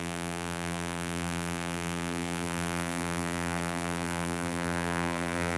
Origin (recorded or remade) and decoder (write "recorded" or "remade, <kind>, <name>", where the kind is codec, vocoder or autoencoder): remade, vocoder, BigVGAN v2